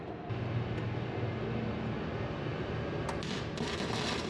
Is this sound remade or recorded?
recorded